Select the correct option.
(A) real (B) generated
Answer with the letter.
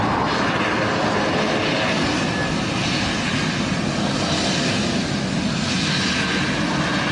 A